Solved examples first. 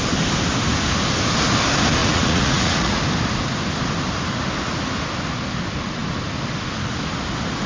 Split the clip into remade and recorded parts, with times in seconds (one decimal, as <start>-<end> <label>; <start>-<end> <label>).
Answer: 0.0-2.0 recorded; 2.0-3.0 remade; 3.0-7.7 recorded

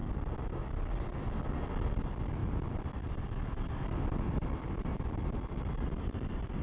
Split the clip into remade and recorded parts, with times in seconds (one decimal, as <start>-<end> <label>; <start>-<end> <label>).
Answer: 0.0-6.6 recorded

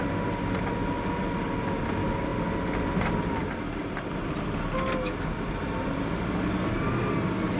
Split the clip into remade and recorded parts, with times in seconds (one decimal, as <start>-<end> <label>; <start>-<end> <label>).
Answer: 0.0-7.6 recorded

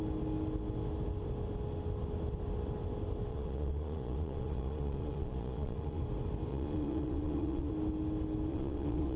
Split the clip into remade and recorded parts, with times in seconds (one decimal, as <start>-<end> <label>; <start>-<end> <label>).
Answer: 0.0-3.3 recorded; 3.3-6.0 remade; 6.0-6.5 recorded; 6.5-7.7 remade; 7.7-8.5 recorded; 8.5-9.2 remade

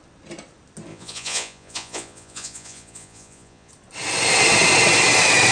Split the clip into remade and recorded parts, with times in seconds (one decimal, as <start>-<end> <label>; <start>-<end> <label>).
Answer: 0.0-0.9 recorded; 0.9-3.7 remade; 3.7-5.5 recorded

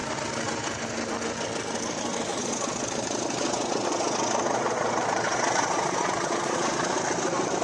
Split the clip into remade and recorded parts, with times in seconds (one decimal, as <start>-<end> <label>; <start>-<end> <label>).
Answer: 0.0-2.3 recorded; 2.3-6.9 remade; 6.9-7.6 recorded